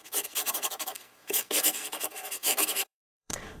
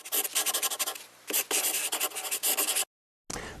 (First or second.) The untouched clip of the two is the second